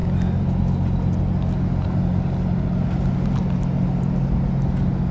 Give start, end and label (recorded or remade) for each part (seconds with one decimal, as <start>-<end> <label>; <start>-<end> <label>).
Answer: 0.0-5.1 recorded